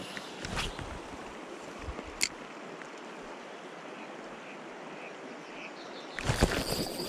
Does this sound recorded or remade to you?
recorded